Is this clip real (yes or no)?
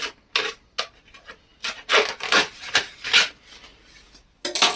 yes